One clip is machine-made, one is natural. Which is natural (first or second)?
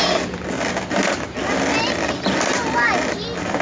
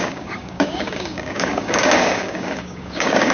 first